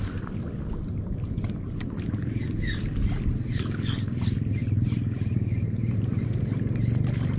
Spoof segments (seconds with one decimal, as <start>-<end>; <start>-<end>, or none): none